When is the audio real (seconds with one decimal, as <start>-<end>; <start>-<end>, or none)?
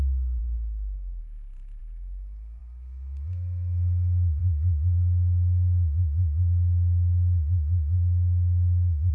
0.0-0.4; 1.2-9.1